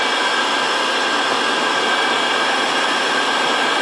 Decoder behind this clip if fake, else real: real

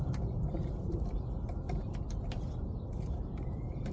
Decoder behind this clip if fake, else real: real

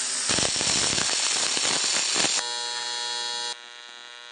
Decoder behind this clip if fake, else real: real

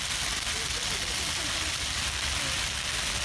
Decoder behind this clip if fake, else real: real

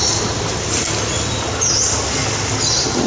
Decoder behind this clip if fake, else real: real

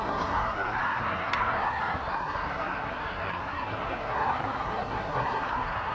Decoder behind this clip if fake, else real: fake, codec, SNAC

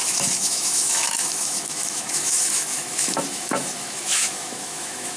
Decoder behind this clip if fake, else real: fake, autoencoder, DAC-VAE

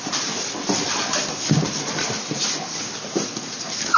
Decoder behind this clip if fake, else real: real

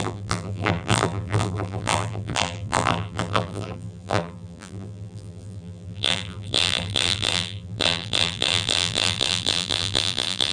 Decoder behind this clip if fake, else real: fake, vocoder, BigVGAN v2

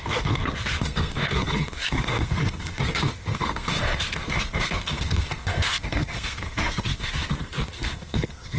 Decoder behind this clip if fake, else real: fake, codec, SNAC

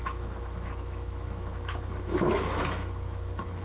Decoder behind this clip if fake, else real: fake, autoencoder, DAC-VAE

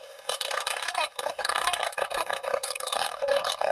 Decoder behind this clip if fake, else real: fake, codec, SNAC